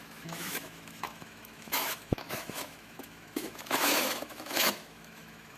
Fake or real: fake